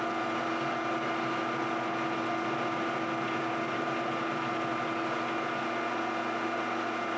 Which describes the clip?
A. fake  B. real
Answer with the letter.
B